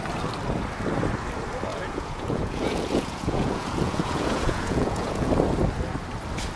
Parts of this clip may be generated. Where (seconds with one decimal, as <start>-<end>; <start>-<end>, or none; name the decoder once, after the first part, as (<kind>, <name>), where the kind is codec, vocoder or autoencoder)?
1.7-5.3 (vocoder, Vocos)